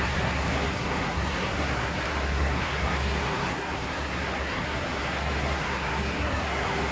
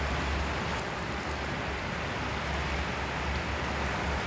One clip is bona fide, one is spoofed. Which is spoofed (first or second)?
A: first